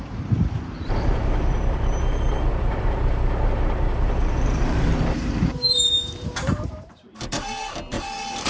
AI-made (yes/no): yes